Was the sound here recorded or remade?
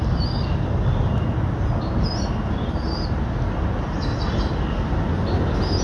recorded